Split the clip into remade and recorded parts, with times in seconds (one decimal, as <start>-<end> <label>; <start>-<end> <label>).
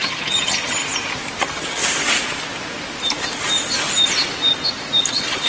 0.0-0.8 remade; 0.8-1.4 recorded; 1.4-1.8 remade; 1.8-5.1 recorded; 5.1-5.5 remade